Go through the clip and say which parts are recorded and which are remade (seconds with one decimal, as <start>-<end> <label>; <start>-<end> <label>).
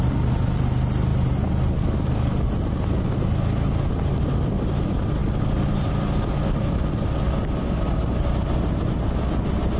0.0-9.8 recorded